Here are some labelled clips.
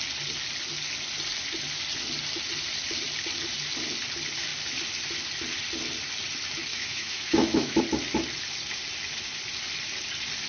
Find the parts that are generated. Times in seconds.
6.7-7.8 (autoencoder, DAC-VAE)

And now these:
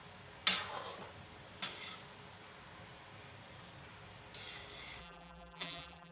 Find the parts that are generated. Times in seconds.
5.0-6.1 (vocoder, BigVGAN v2)

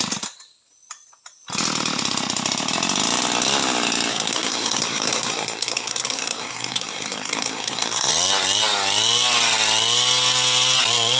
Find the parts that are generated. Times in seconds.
4.1-8.1 (codec, SNAC)

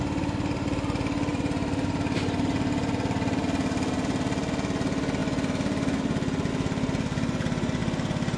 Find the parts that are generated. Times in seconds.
none